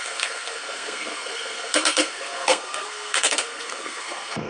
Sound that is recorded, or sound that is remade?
remade